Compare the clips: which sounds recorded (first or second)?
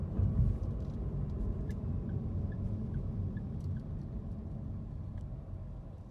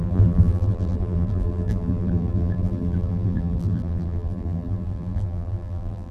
first